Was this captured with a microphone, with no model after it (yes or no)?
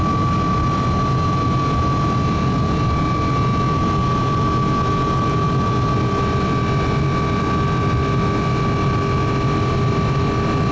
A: yes